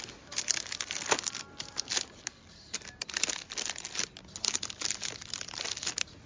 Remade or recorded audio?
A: recorded